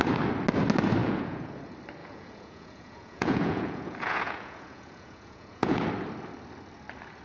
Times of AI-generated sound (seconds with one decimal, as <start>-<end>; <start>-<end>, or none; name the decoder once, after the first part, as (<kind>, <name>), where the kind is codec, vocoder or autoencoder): 1.0-1.5 (vocoder, Vocos); 2.0-5.8